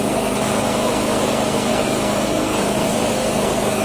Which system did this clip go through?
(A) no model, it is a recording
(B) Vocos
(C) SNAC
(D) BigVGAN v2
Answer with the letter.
C